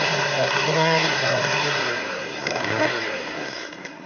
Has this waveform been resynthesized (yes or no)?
yes